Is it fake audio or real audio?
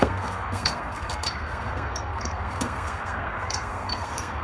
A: fake